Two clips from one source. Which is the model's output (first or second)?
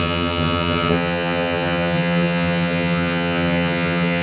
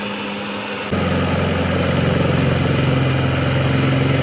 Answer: first